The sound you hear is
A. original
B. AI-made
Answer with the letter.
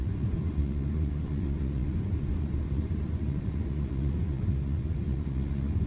B